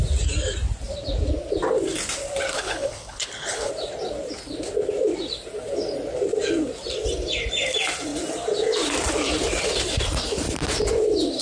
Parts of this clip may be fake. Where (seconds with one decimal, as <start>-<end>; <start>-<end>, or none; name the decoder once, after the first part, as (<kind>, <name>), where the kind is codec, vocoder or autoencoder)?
2.5-3.7 (codec, HILCodec)